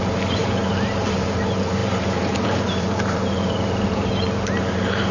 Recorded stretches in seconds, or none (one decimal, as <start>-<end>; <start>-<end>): none

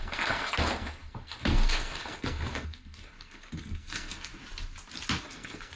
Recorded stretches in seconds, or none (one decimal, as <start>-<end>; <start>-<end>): 4.3-5.2

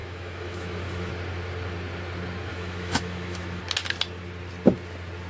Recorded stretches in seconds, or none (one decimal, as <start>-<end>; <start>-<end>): 1.1-2.5; 3.6-5.3